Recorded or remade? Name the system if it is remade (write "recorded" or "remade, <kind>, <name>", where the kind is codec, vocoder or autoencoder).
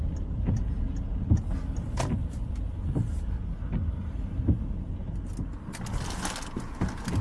recorded